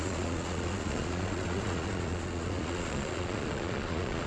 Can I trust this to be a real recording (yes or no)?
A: no